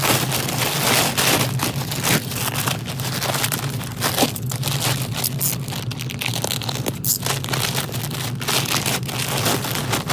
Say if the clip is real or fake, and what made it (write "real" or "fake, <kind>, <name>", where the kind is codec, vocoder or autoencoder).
real